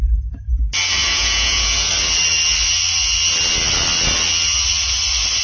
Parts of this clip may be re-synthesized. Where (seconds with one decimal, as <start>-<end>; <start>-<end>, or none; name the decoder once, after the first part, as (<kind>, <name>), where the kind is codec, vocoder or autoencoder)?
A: 1.0-1.9 (vocoder, Vocos)